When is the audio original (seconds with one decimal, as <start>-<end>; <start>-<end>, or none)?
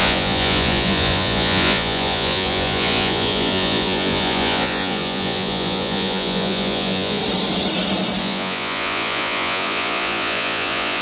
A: 7.2-8.2